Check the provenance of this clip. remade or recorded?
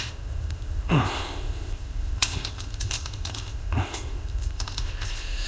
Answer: remade